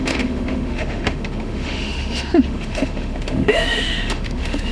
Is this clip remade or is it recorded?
remade